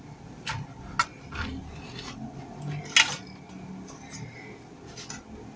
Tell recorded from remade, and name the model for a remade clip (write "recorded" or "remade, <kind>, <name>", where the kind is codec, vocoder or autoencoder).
recorded